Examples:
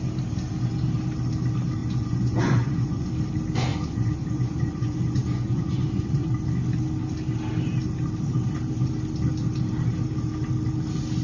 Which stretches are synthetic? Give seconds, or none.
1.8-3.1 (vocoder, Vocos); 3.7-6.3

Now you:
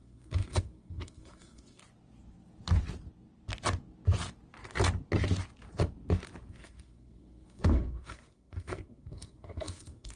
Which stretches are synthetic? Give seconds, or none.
0.0-1.8 (codec, SNAC); 6.5-10.2

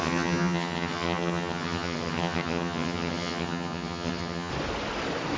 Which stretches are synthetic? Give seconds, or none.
0.0-4.5 (vocoder, HiFi-GAN)

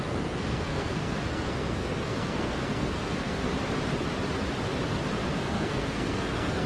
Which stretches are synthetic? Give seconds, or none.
0.0-3.5 (codec, SNAC); 5.3-6.7

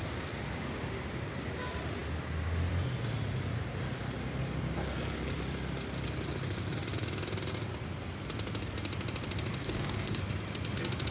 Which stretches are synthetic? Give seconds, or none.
9.6-10.2 (codec, DAC)

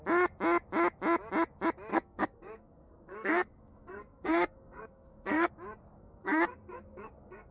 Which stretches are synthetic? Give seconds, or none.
1.9-5.5 (codec, SNAC); 6.0-7.5

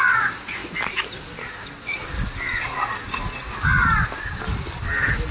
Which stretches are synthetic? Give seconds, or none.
none